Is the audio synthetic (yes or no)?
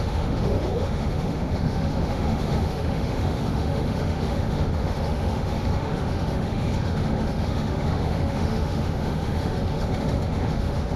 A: yes